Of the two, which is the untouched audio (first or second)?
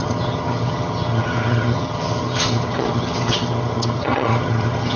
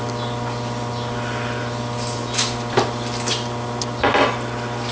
second